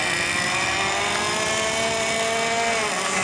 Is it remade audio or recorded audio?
recorded